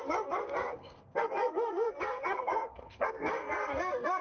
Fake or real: fake